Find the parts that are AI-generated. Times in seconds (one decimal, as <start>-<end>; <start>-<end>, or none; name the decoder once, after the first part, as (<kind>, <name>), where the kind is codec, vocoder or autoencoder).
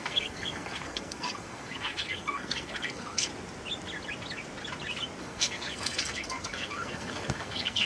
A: 0.0-3.3 (codec, SNAC); 5.2-7.9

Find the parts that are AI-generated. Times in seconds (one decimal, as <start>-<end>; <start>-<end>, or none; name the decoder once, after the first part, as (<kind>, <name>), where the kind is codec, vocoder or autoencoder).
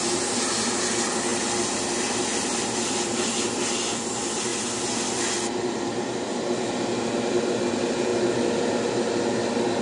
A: none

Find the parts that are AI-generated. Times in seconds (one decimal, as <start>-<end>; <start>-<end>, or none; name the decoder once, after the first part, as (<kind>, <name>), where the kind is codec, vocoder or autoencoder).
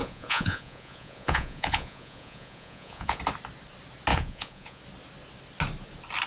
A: 0.0-3.2 (vocoder, Vocos); 4.1-4.8